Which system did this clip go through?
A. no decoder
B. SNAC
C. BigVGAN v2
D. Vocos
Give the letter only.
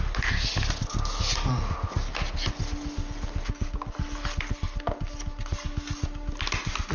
A